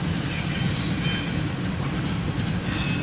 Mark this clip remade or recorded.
recorded